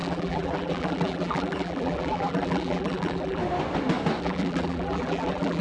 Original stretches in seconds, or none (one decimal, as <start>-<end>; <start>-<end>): 3.4-4.2